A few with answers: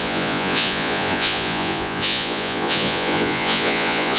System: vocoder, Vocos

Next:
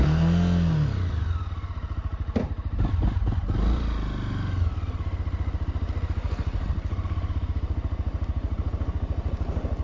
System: none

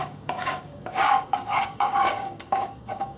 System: codec, DAC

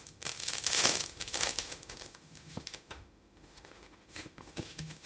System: autoencoder, DAC-VAE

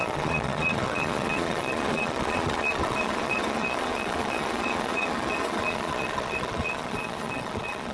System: vocoder, Vocos